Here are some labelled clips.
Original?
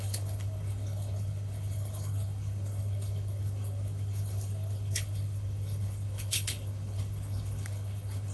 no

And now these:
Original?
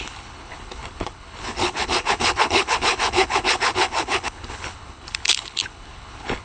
no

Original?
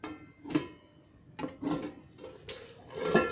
yes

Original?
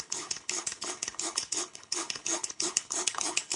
no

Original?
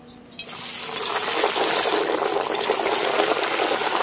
yes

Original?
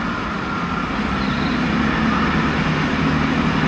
yes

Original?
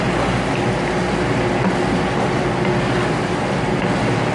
yes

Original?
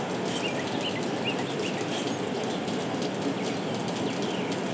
yes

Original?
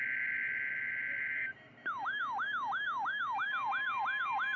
yes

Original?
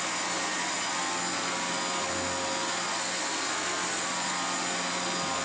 yes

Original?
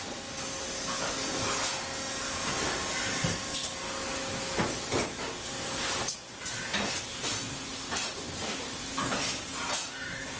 yes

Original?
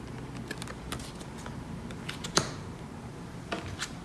yes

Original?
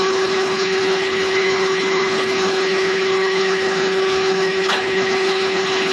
no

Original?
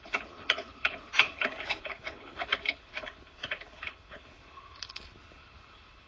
no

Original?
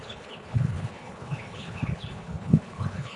no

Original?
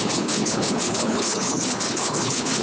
no